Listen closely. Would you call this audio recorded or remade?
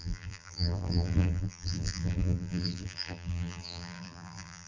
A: remade